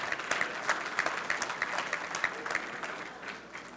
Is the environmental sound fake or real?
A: real